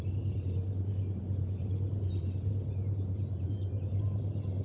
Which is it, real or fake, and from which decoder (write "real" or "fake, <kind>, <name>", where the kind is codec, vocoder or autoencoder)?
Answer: fake, vocoder, BigVGAN v2